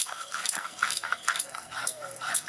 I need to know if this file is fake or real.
fake